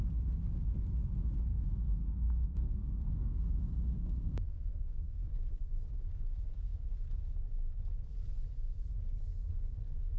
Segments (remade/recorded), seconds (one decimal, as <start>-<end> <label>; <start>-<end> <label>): 0.0-1.5 recorded; 1.5-5.3 remade; 5.3-10.2 recorded